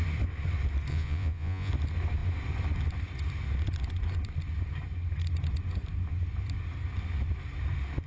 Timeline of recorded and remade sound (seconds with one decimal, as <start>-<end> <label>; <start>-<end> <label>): 0.0-0.9 recorded; 0.9-1.7 remade; 1.7-8.1 recorded